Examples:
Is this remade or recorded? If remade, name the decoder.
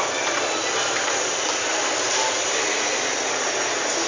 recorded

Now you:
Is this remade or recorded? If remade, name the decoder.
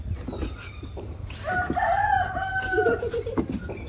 recorded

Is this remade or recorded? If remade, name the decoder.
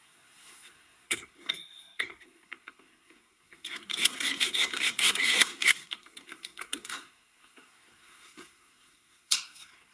remade, codec, SNAC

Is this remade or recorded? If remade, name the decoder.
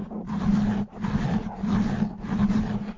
recorded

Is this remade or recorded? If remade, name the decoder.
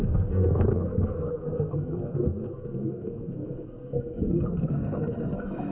remade, codec, SNAC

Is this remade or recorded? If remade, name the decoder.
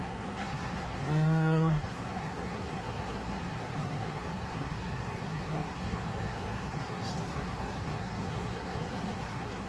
remade, codec, SNAC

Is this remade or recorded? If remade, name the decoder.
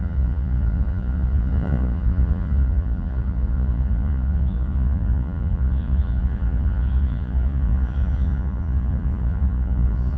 remade, vocoder, Vocos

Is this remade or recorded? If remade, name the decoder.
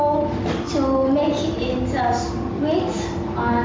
recorded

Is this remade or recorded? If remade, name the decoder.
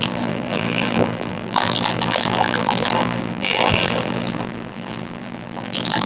remade, vocoder, BigVGAN v2